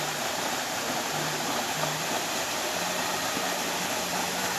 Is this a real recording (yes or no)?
no